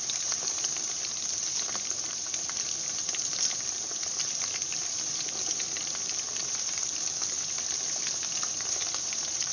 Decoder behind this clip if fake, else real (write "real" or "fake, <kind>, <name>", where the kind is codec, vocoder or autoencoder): fake, vocoder, BigVGAN v2